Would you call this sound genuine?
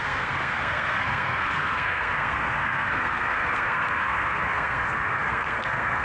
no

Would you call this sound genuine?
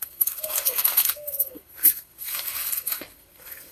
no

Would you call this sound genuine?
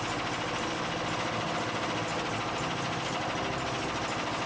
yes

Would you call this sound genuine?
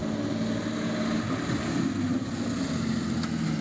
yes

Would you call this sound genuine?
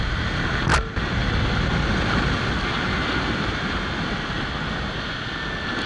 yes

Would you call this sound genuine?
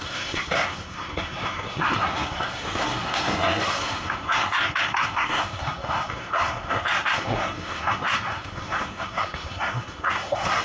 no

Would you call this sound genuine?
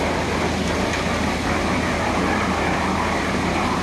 yes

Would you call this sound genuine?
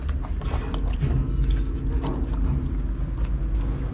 yes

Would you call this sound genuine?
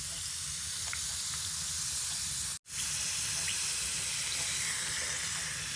yes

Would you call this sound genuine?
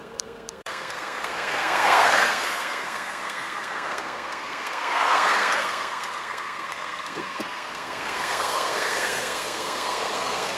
no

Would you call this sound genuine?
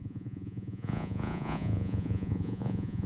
no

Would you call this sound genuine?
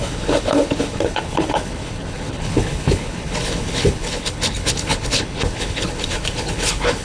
no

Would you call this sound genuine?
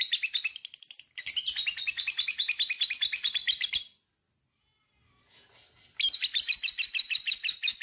yes